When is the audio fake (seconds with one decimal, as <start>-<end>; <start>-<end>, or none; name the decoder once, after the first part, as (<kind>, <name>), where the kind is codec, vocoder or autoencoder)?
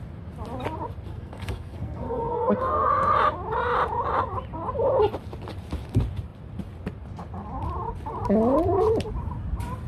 1.1-2.9 (codec, SNAC)